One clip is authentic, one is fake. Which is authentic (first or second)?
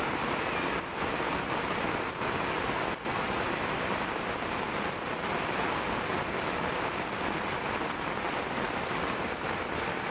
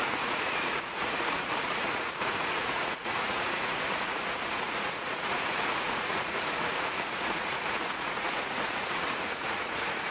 first